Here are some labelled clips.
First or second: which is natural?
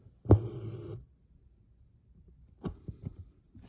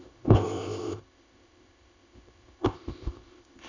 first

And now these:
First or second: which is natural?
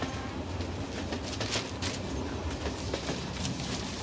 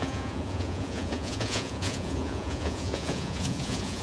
first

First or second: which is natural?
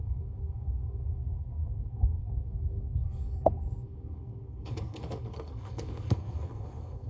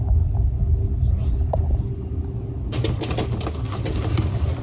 second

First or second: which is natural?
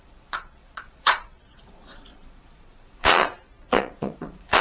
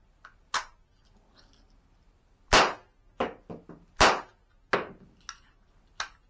second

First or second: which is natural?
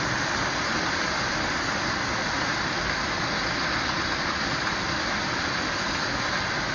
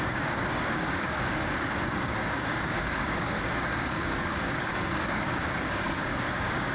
first